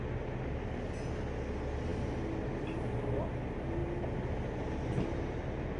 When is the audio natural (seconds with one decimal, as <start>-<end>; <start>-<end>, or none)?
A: 0.0-5.8